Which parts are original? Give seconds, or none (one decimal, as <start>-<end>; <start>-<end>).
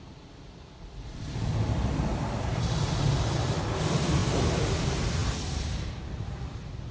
2.1-2.8